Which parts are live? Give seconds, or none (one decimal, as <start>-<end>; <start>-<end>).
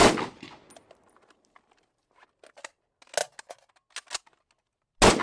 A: 0.0-5.2